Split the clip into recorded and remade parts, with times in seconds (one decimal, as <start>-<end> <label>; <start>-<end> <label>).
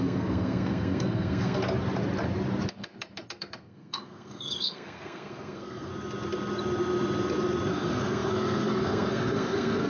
0.0-1.6 remade; 1.6-2.7 recorded; 2.7-5.9 remade; 5.9-7.7 recorded; 7.7-9.9 remade